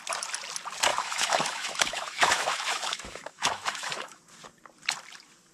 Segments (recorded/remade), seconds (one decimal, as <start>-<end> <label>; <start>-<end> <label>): 0.0-0.9 recorded; 0.9-4.2 remade; 4.2-5.5 recorded